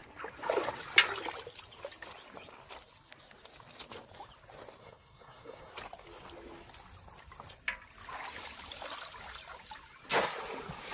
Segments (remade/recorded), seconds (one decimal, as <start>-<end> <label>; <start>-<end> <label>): 0.0-4.8 recorded; 4.8-5.7 remade; 5.7-10.9 recorded